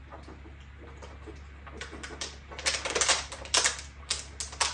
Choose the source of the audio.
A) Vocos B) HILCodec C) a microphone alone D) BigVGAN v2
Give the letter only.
C